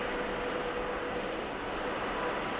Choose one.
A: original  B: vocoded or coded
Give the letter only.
A